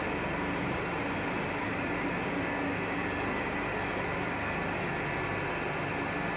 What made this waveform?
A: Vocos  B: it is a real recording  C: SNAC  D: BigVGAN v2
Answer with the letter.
B